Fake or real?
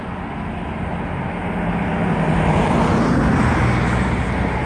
real